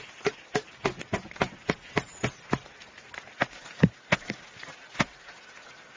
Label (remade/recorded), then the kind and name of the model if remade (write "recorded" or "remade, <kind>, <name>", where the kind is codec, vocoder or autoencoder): recorded